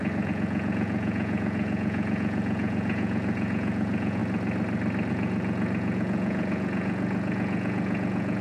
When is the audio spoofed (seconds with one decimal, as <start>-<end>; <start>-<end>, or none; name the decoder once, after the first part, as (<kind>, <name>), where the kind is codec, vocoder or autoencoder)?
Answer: 0.0-4.2 (vocoder, Vocos); 5.1-8.4